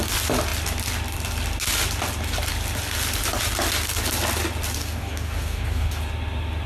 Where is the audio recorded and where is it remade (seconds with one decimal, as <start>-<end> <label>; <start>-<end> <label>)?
0.0-4.8 recorded; 4.8-6.0 remade; 6.0-6.7 recorded